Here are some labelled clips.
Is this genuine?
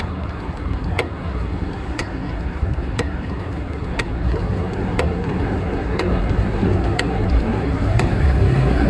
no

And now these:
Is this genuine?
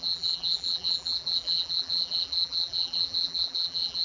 no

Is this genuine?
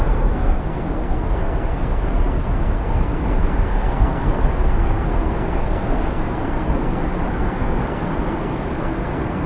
no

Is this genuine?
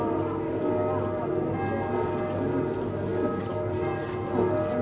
yes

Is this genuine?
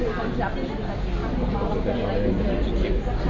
yes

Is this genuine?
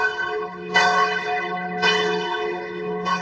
no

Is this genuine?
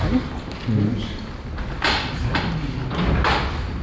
yes